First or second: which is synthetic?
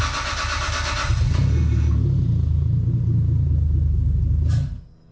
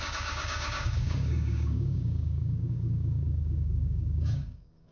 second